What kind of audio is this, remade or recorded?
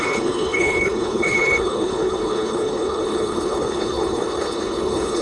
remade